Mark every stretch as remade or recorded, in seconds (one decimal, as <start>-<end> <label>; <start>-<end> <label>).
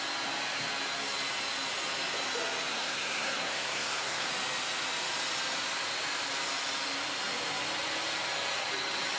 0.0-2.7 recorded; 2.7-4.3 remade; 4.3-9.2 recorded